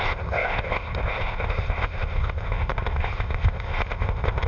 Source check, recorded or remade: remade